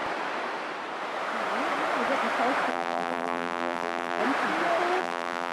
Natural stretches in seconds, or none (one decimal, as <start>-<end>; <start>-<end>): 0.0-2.7; 4.2-5.0